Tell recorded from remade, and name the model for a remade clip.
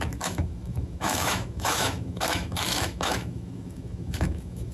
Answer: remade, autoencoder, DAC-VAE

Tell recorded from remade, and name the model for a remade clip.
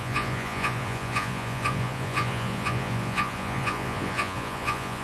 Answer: remade, vocoder, Vocos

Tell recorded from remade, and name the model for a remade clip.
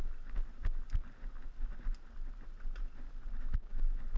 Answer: recorded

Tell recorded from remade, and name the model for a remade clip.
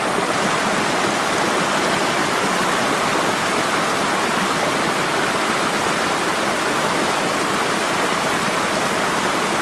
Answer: recorded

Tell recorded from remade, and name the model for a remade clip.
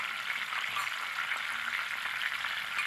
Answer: recorded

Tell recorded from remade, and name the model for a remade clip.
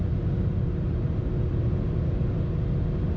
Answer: recorded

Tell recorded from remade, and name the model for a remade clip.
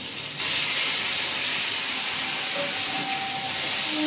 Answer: recorded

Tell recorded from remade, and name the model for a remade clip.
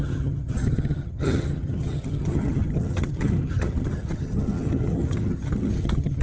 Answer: remade, vocoder, HiFi-GAN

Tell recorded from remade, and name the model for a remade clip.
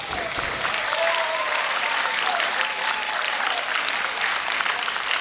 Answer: remade, vocoder, BigVGAN v2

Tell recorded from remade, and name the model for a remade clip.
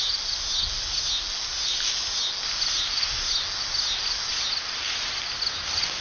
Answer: recorded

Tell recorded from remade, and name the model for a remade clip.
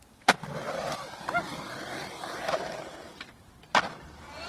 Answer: recorded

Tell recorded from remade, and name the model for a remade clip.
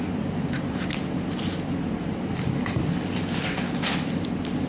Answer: recorded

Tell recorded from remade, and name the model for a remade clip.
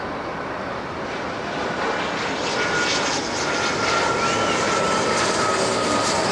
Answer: recorded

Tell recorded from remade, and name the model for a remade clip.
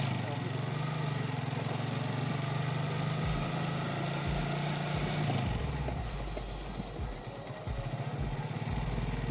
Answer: recorded